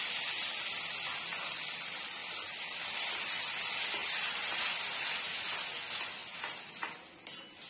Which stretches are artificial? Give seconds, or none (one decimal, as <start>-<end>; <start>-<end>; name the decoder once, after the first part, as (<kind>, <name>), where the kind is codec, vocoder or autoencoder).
2.2-2.9 (vocoder, BigVGAN v2); 4.0-4.7; 6.2-6.7